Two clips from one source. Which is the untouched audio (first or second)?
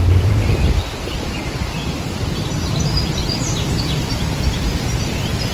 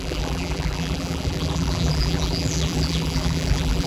first